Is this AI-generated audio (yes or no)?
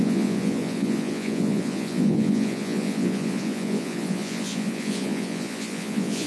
yes